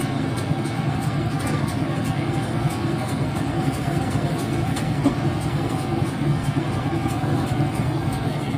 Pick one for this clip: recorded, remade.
remade